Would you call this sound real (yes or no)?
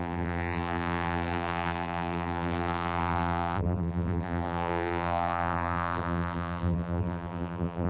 no